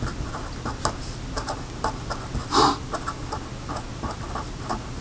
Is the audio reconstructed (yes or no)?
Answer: no